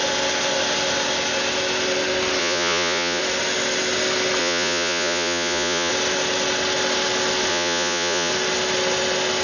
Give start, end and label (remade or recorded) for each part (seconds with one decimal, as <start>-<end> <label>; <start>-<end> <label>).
0.0-2.4 recorded; 2.4-3.2 remade; 3.2-4.4 recorded; 4.4-5.9 remade; 5.9-7.5 recorded; 7.5-8.3 remade; 8.3-9.4 recorded